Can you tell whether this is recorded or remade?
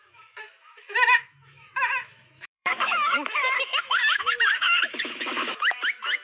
remade